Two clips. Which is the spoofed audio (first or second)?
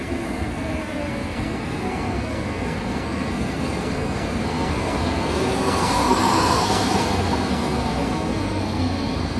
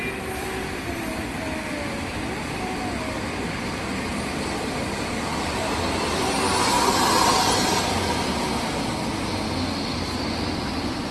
first